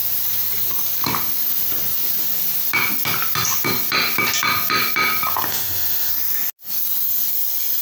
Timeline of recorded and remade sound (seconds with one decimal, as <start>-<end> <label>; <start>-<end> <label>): 0.0-5.5 recorded; 5.5-6.1 remade; 6.1-7.8 recorded